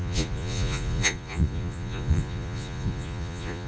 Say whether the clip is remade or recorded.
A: remade